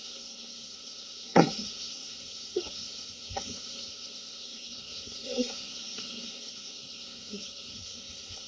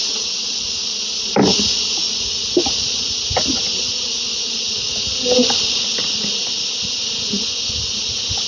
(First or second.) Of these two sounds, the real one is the second